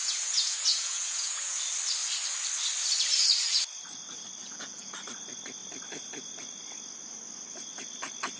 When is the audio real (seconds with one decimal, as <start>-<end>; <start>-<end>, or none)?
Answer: 1.6-4.4; 4.9-8.4